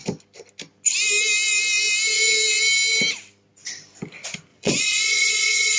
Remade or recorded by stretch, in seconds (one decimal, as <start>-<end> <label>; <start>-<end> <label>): 0.0-4.5 recorded; 4.5-5.8 remade